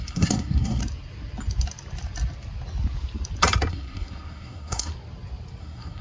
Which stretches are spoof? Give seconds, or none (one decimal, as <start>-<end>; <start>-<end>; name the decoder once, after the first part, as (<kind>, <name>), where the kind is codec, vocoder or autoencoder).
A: 0.0-0.8 (codec, SNAC); 3.7-4.9; 5.6-6.0